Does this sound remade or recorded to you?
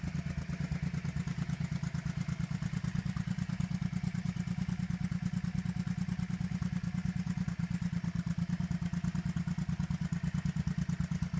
recorded